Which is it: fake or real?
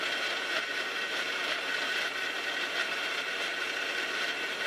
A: fake